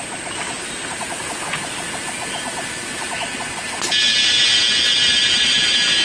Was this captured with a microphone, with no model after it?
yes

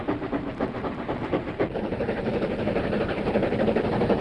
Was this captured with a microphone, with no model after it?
no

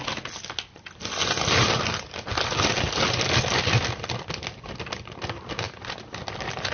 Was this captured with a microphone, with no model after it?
yes